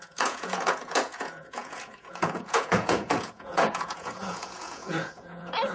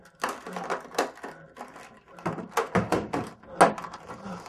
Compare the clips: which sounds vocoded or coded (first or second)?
first